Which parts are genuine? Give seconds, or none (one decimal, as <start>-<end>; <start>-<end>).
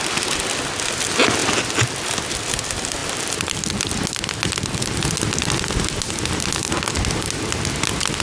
0.0-8.2